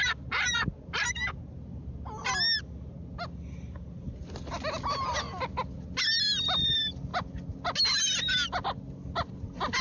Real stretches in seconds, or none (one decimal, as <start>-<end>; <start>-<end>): 0.0-9.8